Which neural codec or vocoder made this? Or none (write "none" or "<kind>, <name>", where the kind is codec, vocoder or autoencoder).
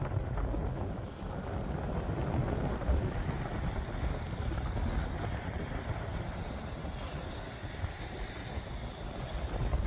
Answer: none